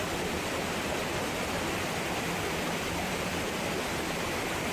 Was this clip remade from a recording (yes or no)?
no